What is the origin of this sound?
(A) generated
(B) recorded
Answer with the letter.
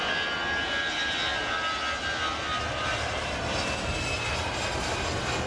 B